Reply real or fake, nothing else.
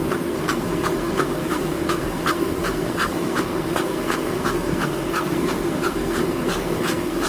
fake